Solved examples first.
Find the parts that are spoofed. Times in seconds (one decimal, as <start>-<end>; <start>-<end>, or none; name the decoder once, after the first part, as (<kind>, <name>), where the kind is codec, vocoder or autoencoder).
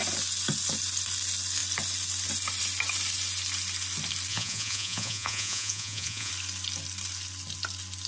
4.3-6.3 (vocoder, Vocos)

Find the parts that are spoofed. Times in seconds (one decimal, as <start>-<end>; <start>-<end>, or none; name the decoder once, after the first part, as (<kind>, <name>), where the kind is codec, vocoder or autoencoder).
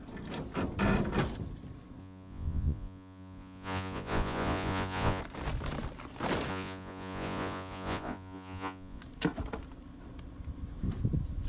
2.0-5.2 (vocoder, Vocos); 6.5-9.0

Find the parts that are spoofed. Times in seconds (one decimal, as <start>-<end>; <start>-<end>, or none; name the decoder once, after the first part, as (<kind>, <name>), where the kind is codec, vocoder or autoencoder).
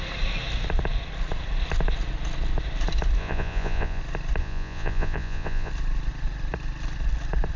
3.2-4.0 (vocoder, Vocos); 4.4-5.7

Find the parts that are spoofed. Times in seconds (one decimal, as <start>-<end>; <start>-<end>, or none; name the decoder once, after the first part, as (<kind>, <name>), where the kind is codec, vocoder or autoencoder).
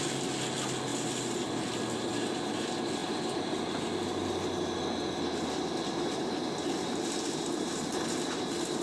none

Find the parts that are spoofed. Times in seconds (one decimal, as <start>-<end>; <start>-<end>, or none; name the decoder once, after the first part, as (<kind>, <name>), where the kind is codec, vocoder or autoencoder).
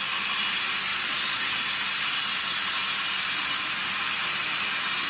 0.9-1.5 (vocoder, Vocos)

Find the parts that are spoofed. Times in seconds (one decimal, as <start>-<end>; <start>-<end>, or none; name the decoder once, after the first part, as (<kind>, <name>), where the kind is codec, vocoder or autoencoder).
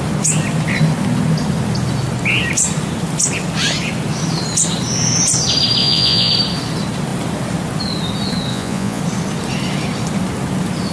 5.8-6.3 (vocoder, Vocos); 8.5-9.0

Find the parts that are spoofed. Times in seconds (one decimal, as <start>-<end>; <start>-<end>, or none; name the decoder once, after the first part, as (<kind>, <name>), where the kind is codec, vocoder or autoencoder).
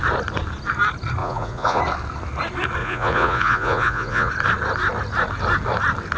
1.2-1.8 (vocoder, Vocos); 2.8-4.3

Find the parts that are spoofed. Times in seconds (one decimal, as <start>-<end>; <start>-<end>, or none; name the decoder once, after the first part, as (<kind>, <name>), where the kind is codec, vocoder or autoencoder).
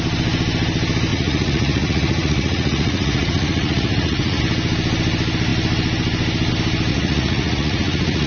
1.1-4.4 (vocoder, Vocos); 6.9-8.3